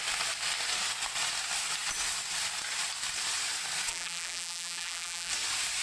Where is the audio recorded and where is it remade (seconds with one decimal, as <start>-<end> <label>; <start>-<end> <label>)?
0.0-3.9 recorded; 3.9-5.3 remade; 5.3-5.8 recorded